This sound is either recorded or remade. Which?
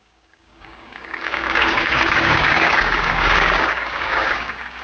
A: remade